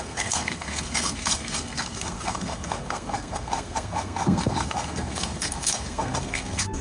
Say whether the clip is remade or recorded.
remade